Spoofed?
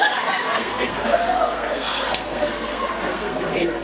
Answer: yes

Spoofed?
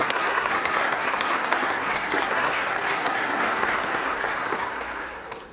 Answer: yes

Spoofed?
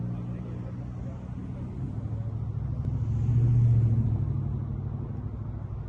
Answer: no